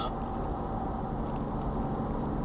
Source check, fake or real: real